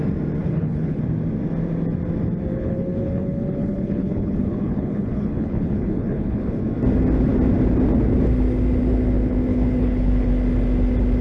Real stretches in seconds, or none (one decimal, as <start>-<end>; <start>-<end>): 0.0-0.4; 1.0-2.5; 6.6-9.5; 10.3-11.2